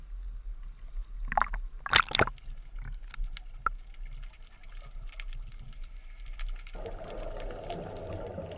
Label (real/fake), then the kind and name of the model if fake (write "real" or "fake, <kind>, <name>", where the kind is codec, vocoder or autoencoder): real